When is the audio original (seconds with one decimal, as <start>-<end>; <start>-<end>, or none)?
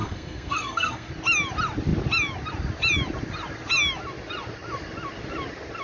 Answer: 1.1-5.8